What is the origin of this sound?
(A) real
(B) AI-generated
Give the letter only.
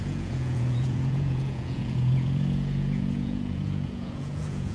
B